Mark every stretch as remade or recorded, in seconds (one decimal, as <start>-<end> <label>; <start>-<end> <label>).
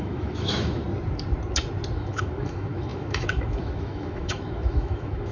0.0-0.8 remade; 0.8-2.0 recorded; 2.0-5.3 remade